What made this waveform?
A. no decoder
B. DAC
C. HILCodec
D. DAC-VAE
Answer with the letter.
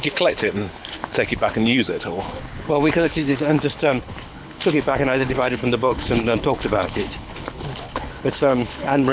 C